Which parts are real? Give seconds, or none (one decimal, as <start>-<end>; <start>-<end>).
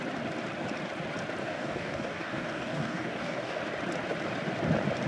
0.0-1.4; 3.6-5.1